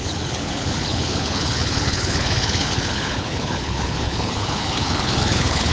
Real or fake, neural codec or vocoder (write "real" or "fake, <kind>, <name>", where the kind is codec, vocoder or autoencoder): fake, codec, HILCodec